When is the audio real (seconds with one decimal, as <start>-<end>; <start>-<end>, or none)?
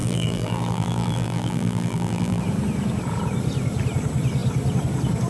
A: 2.4-5.3